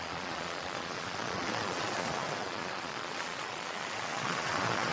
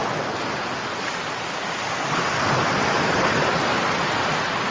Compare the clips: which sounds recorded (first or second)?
second